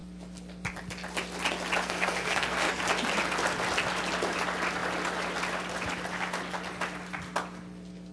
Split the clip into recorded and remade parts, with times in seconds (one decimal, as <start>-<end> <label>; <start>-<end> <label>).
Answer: 0.0-1.8 recorded; 1.8-2.8 remade; 2.8-8.1 recorded